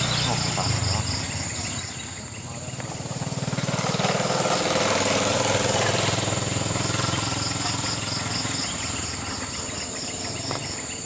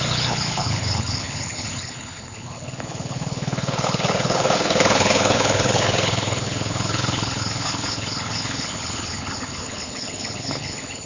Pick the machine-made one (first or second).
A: second